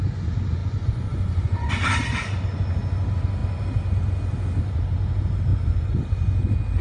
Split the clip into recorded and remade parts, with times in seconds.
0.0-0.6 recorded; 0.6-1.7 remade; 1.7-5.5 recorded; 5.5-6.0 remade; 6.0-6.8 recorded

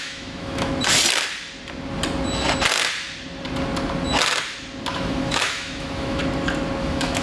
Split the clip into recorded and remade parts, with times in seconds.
0.0-0.7 remade; 0.7-4.9 recorded; 4.9-6.2 remade; 6.2-6.8 recorded; 6.8-7.2 remade

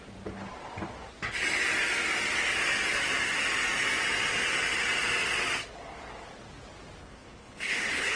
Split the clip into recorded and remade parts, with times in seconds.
0.0-7.0 recorded; 7.0-8.2 remade

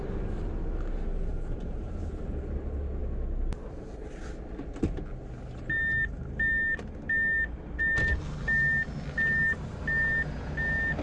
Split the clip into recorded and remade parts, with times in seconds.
0.0-1.3 recorded; 1.3-2.1 remade; 2.1-11.0 recorded

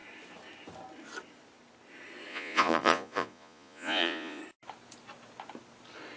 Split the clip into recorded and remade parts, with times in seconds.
0.0-2.3 recorded; 2.3-4.4 remade; 4.4-6.2 recorded